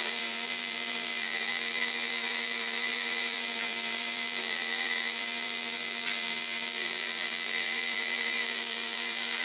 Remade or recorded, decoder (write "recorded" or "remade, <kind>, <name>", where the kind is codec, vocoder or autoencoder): remade, vocoder, BigVGAN v2